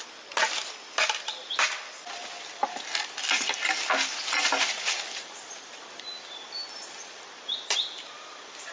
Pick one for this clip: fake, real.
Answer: real